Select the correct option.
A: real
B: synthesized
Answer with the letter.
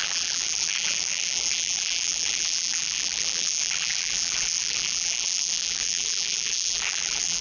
B